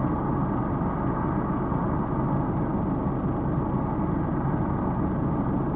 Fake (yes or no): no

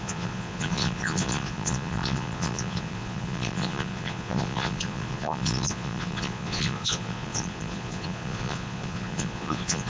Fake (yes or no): yes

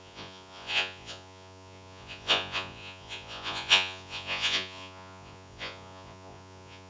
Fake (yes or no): yes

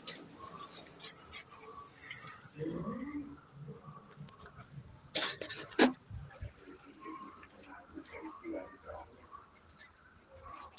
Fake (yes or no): no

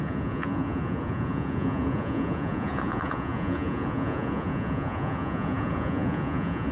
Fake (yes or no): yes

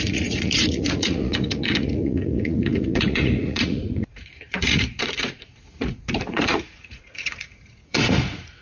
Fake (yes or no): yes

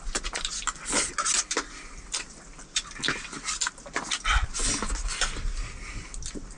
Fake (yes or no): no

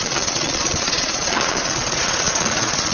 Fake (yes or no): yes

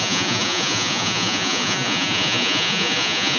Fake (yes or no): yes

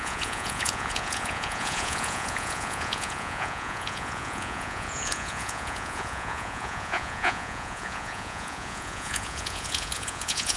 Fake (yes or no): yes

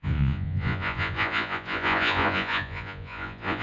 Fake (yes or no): yes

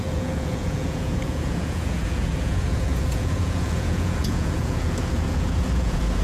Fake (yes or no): yes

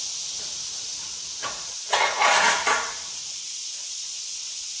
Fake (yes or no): yes